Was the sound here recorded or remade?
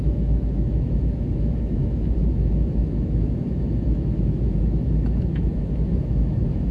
remade